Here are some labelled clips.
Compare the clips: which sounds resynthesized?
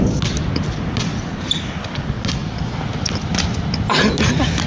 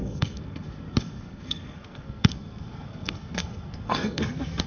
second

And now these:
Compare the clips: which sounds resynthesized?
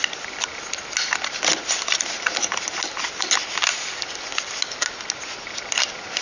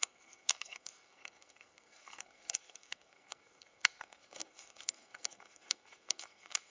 second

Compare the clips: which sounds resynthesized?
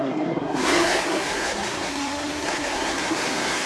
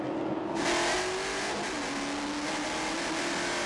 first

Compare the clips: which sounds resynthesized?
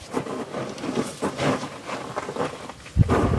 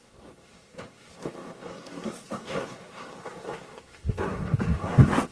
second